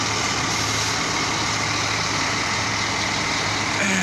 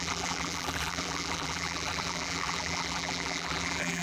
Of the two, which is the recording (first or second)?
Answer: first